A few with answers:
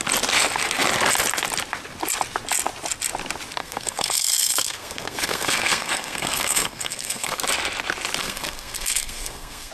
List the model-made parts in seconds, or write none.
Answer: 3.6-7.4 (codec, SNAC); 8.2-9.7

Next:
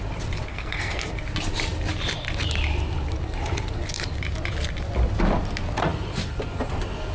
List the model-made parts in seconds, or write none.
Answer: 0.5-1.1 (codec, SNAC)

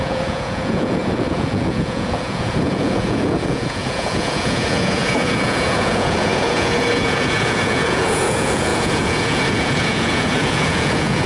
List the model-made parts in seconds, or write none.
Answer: 0.0-11.3 (vocoder, Vocos)

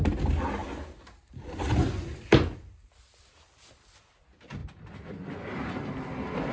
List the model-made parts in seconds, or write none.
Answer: none

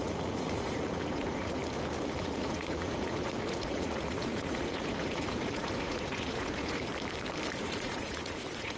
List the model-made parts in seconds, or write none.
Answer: 0.0-1.6 (vocoder, Vocos); 2.2-6.9; 7.6-8.8

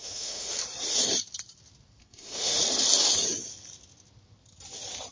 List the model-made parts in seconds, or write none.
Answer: 0.0-0.5 (autoencoder, DAC-VAE); 2.0-2.6

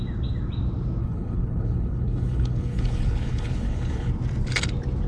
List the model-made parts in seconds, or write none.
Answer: 1.0-4.1 (codec, HILCodec)